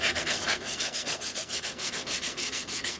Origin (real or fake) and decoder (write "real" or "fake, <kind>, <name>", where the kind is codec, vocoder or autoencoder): fake, codec, SNAC